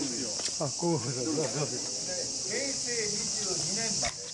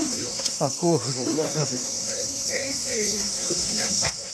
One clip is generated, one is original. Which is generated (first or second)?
second